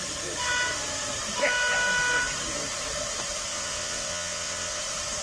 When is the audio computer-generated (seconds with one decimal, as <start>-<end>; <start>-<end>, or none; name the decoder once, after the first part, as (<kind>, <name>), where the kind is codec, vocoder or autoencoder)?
3.5-4.8 (vocoder, WaveNeXt)